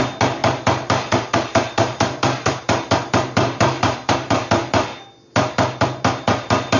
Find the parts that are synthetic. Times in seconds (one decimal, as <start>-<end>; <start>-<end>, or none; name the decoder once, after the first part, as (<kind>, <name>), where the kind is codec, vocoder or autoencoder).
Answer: 0.4-4.5 (vocoder, BigVGAN v2)

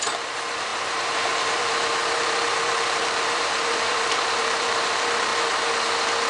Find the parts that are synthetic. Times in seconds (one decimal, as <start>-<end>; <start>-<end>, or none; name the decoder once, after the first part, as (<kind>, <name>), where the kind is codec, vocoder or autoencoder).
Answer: 0.0-5.3 (vocoder, BigVGAN v2)

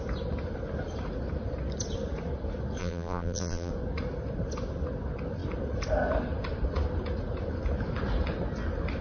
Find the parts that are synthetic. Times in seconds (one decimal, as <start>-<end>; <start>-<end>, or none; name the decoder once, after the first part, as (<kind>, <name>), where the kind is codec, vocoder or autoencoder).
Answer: 2.8-3.7 (vocoder, BigVGAN v2)

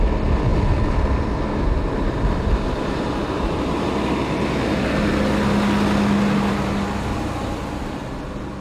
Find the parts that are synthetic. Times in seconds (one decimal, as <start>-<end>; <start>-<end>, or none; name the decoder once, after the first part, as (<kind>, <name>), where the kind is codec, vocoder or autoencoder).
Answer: 0.5-4.1 (vocoder, BigVGAN v2)

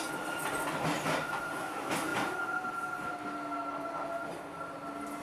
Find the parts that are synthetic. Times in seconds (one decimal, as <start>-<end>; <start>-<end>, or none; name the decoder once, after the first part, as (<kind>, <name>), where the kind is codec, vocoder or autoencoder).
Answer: none

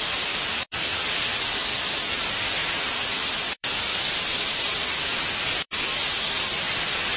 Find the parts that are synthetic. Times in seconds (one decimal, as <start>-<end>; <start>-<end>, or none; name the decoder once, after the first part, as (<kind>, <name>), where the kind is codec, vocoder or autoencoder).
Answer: 0.0-1.7 (vocoder, BigVGAN v2); 2.4-3.9; 5.6-7.2

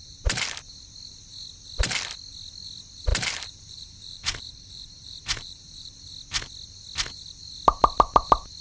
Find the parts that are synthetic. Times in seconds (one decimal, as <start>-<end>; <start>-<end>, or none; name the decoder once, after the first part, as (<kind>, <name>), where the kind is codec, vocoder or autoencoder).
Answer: 3.1-5.9 (vocoder, BigVGAN v2)